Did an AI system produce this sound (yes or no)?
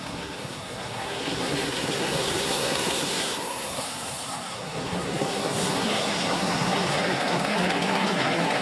yes